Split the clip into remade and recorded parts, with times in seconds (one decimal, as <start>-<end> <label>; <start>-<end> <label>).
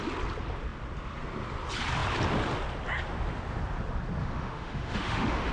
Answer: 0.0-4.2 recorded; 4.2-5.5 remade